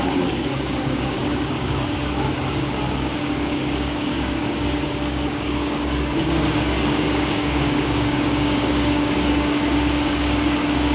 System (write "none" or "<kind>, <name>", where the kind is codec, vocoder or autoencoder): codec, DAC